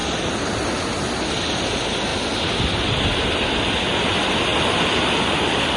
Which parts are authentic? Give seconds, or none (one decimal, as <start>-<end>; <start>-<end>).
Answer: 0.0-5.8